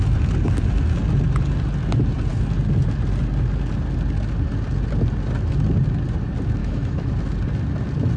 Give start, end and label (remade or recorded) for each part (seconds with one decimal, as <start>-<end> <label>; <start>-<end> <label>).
0.0-6.6 recorded; 6.6-7.1 remade; 7.1-8.2 recorded